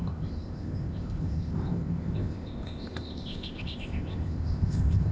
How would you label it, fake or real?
fake